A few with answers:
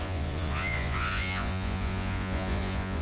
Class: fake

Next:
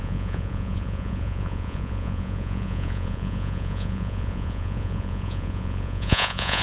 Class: fake